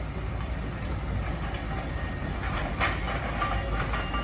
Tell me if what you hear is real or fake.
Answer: real